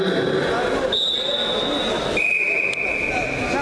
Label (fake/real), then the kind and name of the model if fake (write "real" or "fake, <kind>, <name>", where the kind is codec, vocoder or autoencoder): real